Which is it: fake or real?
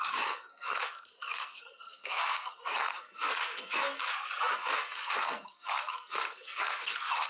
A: fake